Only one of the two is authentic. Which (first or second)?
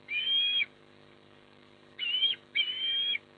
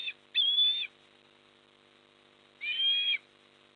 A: second